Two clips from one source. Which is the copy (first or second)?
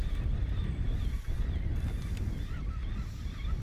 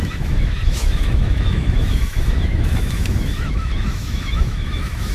second